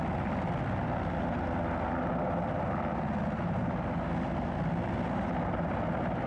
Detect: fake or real real